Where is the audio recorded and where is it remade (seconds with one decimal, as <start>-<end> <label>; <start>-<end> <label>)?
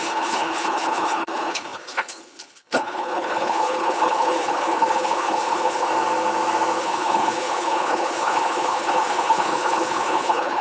0.0-5.9 remade; 5.9-6.8 recorded; 6.8-10.6 remade